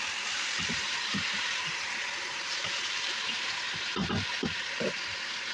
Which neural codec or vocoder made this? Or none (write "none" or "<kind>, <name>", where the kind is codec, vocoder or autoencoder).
vocoder, BigVGAN v2